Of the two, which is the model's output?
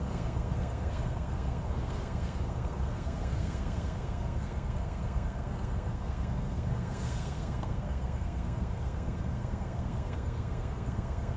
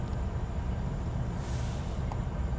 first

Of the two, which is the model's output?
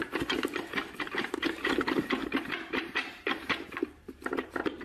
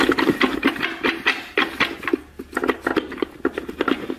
first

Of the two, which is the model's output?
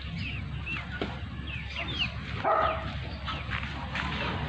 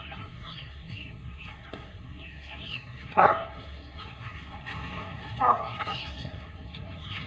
second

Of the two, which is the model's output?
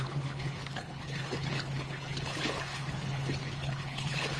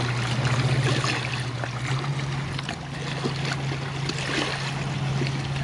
first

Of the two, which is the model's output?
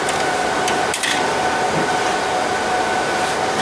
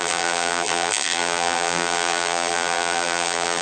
second